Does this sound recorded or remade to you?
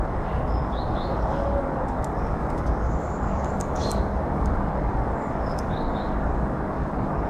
remade